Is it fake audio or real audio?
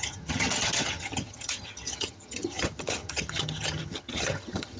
fake